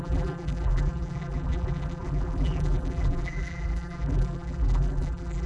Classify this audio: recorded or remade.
remade